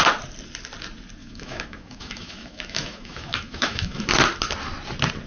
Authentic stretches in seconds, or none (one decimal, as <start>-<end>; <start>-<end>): 0.0-1.2; 4.1-5.3